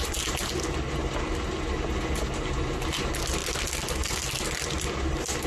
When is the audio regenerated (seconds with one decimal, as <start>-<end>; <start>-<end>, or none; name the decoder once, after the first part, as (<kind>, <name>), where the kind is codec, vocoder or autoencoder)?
none